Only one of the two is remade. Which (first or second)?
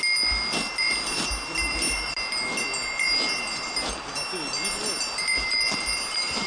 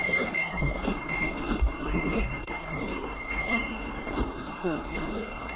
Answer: second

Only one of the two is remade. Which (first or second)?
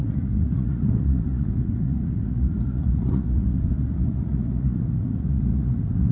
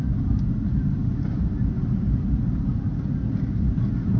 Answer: first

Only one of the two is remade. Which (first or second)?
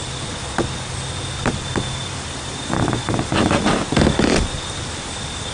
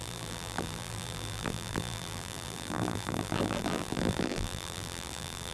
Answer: second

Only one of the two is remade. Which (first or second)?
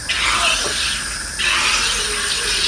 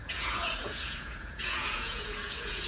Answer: second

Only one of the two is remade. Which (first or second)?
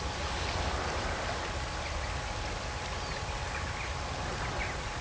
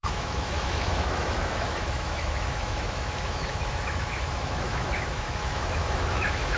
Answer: second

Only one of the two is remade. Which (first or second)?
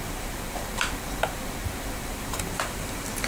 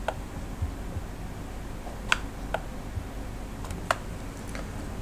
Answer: first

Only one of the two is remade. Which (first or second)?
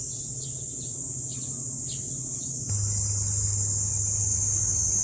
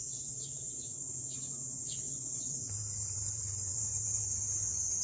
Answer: second